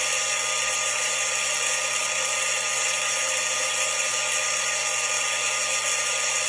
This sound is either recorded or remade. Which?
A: recorded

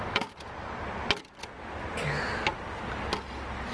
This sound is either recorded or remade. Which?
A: recorded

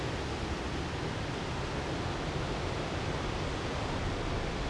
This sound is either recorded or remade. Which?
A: recorded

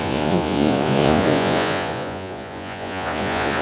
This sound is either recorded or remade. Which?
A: remade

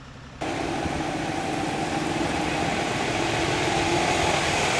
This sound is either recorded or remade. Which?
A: remade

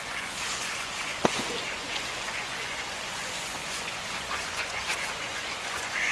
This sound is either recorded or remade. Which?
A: remade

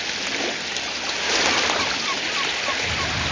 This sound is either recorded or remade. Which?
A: recorded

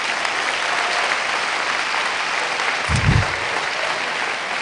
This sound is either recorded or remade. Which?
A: recorded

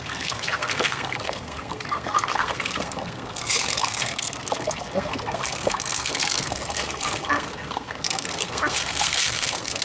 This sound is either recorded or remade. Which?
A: remade